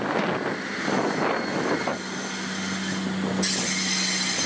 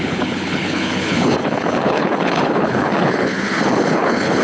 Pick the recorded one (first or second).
first